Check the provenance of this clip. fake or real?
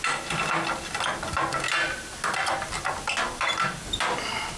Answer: real